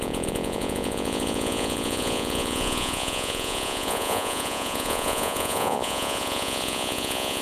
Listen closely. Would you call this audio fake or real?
fake